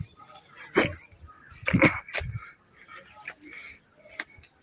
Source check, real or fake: real